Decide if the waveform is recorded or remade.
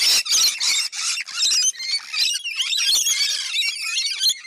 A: recorded